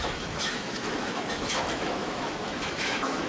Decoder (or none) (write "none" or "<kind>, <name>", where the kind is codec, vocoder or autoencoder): autoencoder, DAC-VAE